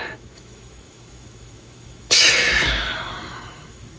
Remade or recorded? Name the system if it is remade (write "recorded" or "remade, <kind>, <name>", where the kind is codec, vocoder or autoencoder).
remade, autoencoder, DAC-VAE